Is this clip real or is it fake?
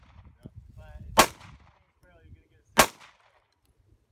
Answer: real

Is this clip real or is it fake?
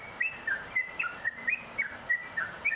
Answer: fake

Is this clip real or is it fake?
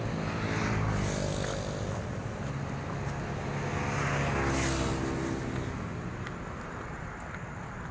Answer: real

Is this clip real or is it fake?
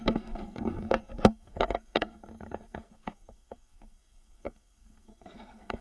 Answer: fake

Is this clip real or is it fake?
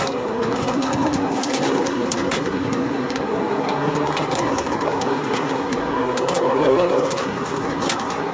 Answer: fake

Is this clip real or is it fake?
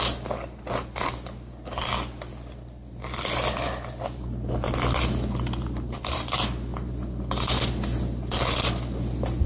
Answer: real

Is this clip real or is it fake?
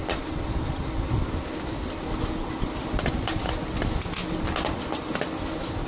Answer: real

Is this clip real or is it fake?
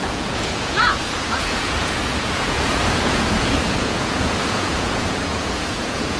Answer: fake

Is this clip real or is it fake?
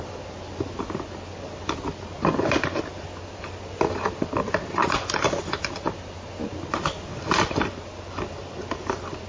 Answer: real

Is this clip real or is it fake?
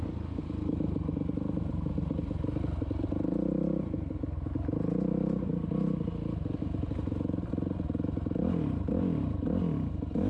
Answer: real